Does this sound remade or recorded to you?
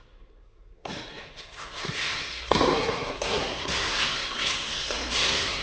remade